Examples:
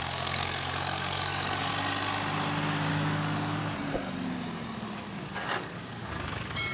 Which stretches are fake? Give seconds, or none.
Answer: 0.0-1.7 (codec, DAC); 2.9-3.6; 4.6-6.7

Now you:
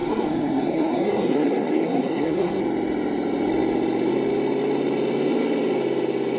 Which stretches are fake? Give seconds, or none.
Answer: 0.0-2.6 (codec, SNAC)

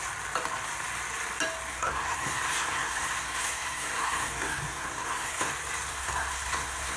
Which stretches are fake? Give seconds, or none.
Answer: 1.7-5.5 (codec, SNAC); 5.9-7.0

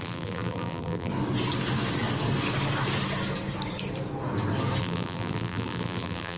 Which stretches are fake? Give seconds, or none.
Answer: 0.0-1.1 (vocoder, BigVGAN v2); 4.8-6.4

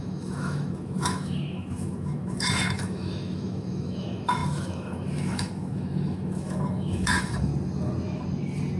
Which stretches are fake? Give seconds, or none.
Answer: 0.0-7.5 (autoencoder, DAC-VAE)

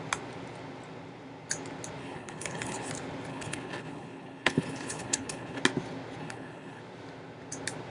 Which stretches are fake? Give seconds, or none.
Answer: 2.0-2.9 (codec, HILCodec); 3.3-5.6; 6.2-6.8

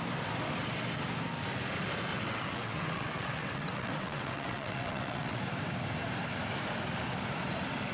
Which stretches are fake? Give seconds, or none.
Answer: 2.1-5.4 (vocoder, WaveNeXt)

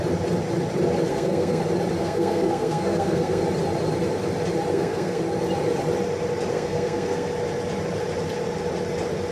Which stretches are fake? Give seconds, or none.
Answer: 1.1-1.6 (codec, SNAC); 2.0-3.4; 4.7-5.2; 6.5-7.3